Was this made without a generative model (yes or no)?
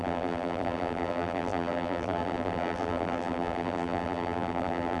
no